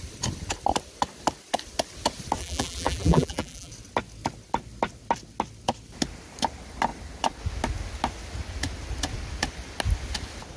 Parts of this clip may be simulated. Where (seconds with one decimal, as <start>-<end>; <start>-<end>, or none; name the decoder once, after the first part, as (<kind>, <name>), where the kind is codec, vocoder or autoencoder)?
2.4-3.7 (vocoder, BigVGAN v2)